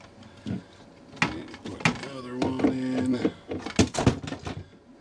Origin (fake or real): real